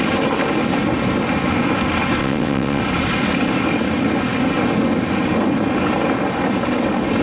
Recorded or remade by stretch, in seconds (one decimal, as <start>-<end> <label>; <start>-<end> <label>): 0.0-2.2 recorded; 2.2-2.8 remade; 2.8-7.2 recorded